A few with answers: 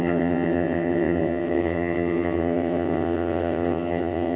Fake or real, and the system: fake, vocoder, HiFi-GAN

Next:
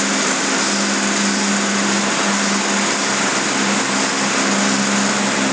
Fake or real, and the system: real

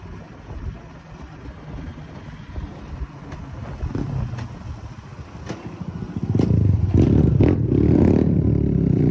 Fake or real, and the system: real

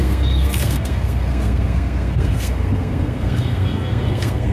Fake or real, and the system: fake, codec, SNAC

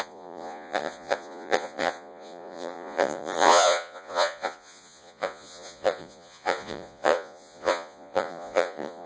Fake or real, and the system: fake, vocoder, Vocos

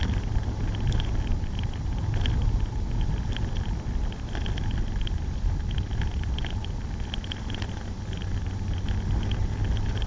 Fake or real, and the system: real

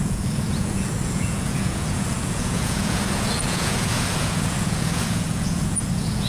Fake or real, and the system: fake, vocoder, Vocos